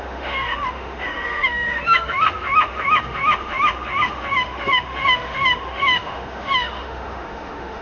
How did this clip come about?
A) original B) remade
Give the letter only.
B